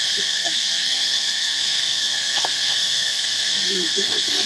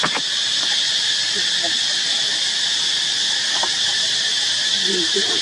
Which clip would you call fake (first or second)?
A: first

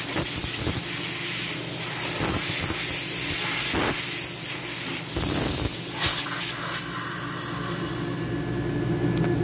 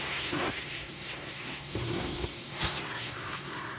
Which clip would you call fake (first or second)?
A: second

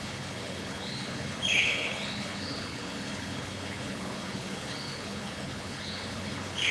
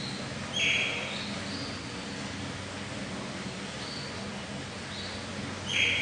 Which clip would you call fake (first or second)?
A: first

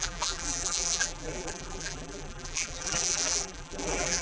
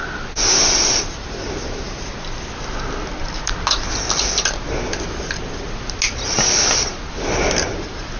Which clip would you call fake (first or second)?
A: first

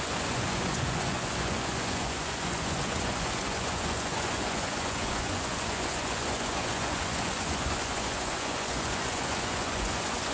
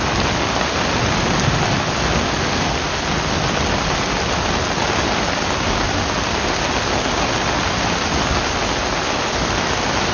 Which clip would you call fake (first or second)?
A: first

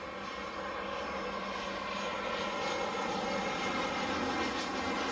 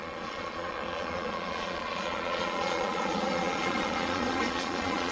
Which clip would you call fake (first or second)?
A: second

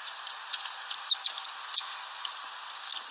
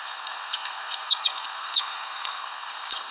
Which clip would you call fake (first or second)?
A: second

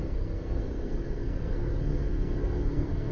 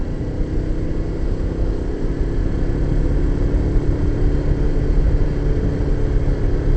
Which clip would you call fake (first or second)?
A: first